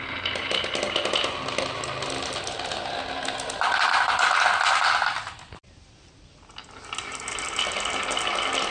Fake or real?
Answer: real